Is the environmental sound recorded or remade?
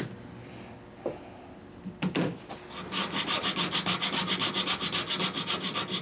recorded